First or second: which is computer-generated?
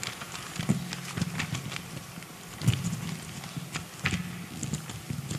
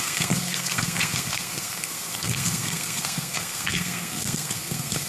second